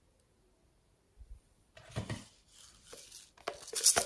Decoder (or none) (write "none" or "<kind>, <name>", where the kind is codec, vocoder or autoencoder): none